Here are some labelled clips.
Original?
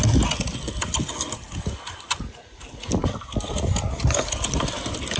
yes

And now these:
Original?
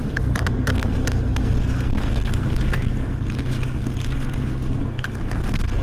no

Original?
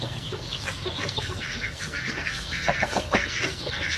no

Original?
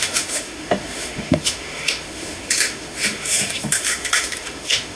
no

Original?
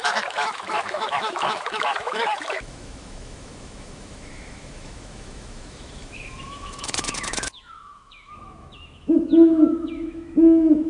no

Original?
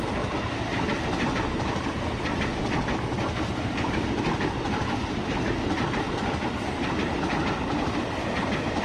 yes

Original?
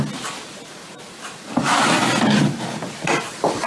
yes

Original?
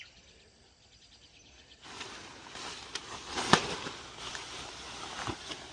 yes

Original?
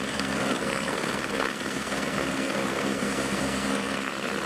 no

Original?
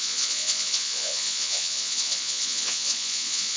no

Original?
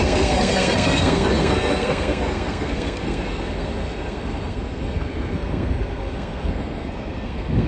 no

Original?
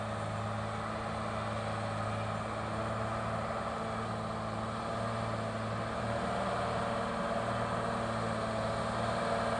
yes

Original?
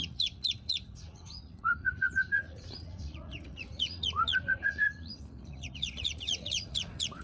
no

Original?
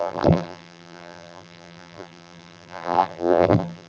no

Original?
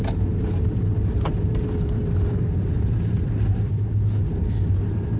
no